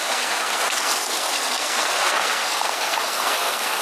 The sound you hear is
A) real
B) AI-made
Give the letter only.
B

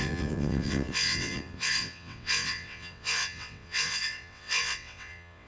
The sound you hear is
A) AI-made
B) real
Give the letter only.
A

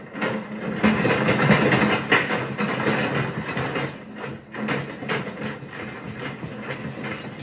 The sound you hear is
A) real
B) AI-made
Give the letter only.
A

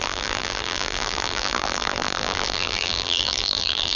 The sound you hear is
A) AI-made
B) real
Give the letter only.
A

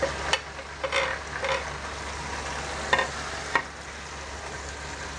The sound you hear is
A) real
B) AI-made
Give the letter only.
A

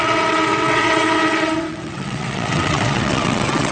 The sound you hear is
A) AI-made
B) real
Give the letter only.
A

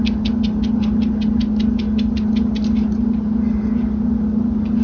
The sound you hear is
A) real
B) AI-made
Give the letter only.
A